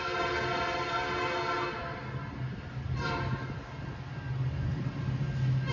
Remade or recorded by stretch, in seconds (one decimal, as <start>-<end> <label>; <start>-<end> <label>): 0.0-5.7 recorded